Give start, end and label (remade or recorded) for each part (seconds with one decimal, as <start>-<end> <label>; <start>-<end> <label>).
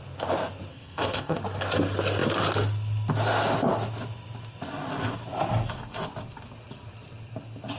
0.0-0.7 recorded; 0.7-1.4 remade; 1.4-7.8 recorded